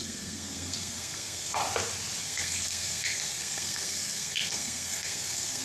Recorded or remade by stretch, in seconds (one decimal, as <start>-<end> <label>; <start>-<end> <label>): 0.0-1.6 remade; 1.6-2.2 recorded; 2.2-5.6 remade